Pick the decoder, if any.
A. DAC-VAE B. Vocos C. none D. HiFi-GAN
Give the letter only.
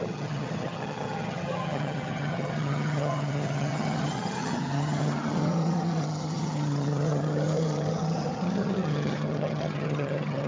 D